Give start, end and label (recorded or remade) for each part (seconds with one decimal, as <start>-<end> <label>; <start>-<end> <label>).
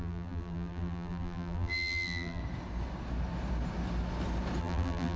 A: 0.0-2.4 remade; 2.4-4.6 recorded; 4.6-5.2 remade